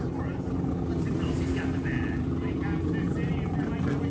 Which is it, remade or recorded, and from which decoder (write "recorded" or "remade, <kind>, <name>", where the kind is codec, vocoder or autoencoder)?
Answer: recorded